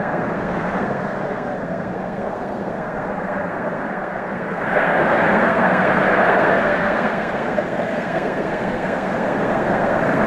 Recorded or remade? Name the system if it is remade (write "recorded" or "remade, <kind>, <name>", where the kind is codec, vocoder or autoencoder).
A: remade, codec, SNAC